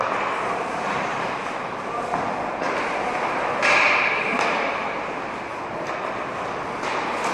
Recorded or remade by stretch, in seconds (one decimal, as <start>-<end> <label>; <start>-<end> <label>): 0.0-7.3 recorded